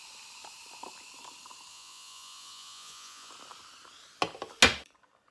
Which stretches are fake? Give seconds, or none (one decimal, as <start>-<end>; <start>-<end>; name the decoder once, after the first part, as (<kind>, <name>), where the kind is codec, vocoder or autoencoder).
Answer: 1.7-3.3 (vocoder, Vocos)